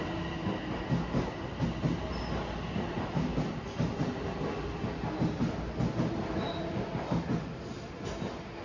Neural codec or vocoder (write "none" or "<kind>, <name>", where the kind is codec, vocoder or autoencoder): none